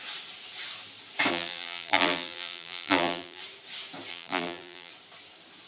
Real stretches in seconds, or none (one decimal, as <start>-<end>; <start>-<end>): 0.0-1.3; 3.4-4.1; 4.9-5.7

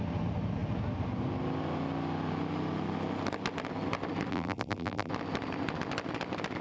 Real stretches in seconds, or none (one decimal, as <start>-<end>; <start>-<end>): 0.0-4.3; 5.1-6.6

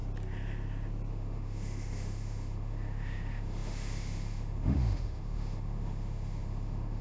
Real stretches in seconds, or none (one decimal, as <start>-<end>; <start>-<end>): 0.0-1.1

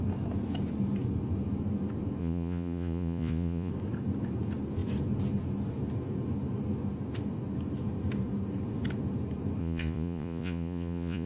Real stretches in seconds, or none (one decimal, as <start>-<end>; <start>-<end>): 0.0-2.2; 3.7-9.6

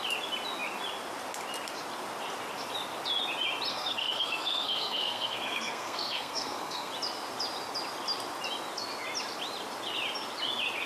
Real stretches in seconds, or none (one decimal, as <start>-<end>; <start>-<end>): 0.0-3.7; 6.9-10.9

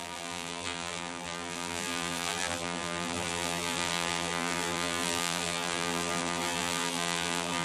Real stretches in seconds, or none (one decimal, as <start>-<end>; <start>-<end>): none

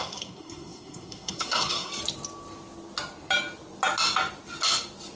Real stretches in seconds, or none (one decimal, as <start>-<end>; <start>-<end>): 1.9-5.2

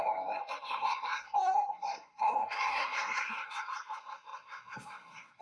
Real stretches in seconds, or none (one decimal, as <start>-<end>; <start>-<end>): none